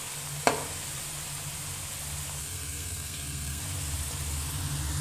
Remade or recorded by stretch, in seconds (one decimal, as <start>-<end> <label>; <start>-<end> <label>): 0.0-2.4 recorded; 2.4-3.6 remade; 3.6-5.0 recorded